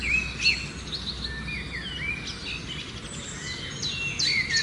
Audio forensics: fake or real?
real